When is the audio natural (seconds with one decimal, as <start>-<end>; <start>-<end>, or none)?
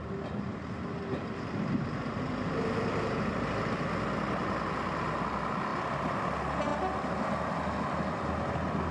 0.0-0.5; 1.5-5.7; 6.2-8.9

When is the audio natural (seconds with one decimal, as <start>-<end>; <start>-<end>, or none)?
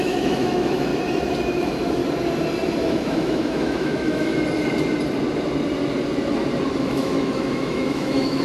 0.9-1.5; 2.0-2.8; 4.3-6.8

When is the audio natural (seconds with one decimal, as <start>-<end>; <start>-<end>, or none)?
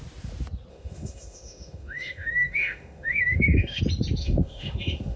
0.0-0.7; 3.8-4.2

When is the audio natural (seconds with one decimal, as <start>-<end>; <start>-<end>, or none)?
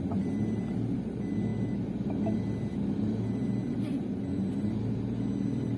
0.0-5.8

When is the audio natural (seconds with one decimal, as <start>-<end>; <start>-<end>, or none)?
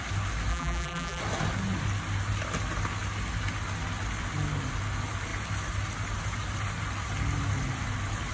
0.0-0.5; 1.2-8.3